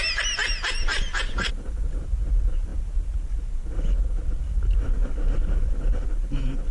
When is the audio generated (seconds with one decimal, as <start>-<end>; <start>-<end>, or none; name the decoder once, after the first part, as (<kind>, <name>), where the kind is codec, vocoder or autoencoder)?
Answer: 0.4-2.0 (vocoder, BigVGAN v2)